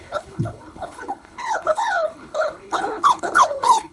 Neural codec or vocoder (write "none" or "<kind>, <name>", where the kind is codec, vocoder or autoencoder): codec, HILCodec